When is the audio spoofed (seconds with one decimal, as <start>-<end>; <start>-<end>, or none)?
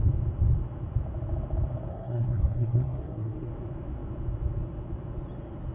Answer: 1.9-3.5